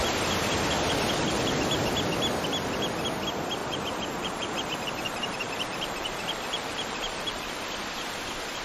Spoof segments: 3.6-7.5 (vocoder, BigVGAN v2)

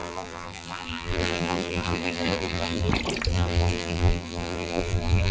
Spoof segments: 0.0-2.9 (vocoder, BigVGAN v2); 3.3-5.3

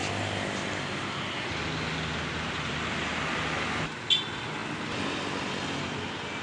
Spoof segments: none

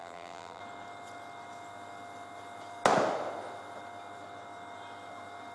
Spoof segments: 0.0-0.6 (vocoder, BigVGAN v2)